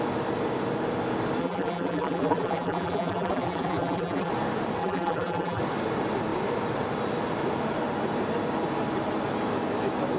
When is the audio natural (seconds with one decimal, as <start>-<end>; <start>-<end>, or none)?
0.0-1.4; 4.3-4.8; 5.6-10.2